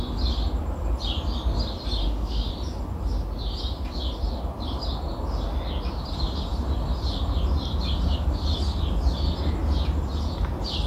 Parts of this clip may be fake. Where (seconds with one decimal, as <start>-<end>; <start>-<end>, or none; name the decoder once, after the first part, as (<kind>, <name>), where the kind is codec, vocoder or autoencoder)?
2.0-2.5 (autoencoder, DAC-VAE)